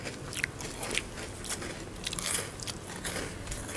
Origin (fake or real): real